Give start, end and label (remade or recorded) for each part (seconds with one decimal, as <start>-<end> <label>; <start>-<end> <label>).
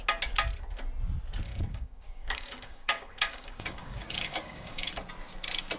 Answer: 0.0-1.5 recorded; 1.5-4.9 remade; 4.9-5.8 recorded